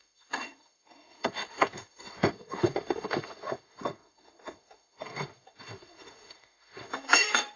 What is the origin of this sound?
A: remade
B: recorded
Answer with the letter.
A